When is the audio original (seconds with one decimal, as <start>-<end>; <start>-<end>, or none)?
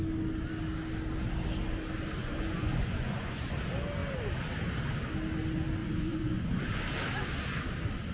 0.0-2.2; 3.6-5.8; 6.6-8.1